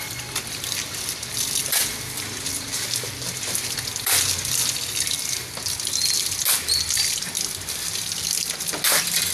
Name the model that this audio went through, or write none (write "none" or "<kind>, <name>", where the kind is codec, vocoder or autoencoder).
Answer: none